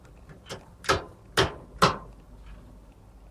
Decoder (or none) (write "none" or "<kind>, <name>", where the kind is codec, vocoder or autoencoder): none